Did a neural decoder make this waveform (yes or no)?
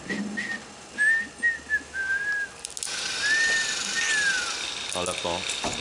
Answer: no